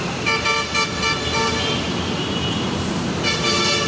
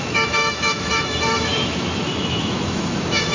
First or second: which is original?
first